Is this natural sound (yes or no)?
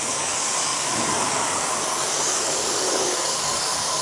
no